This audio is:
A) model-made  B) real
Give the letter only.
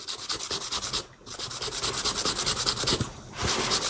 B